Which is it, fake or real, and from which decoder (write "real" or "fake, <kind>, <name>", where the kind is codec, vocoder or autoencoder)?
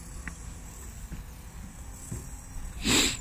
real